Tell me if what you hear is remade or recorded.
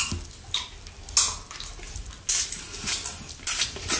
recorded